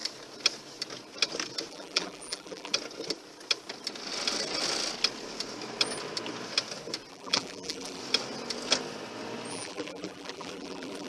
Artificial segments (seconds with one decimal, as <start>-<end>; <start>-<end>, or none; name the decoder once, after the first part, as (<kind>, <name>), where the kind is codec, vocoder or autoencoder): 1.7-2.7 (vocoder, BigVGAN v2); 7.1-8.0; 9.5-11.1